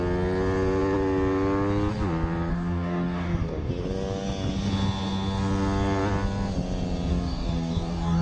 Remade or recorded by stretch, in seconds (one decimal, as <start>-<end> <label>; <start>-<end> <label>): 0.0-2.5 recorded; 2.5-3.7 remade; 3.7-7.1 recorded; 7.1-8.2 remade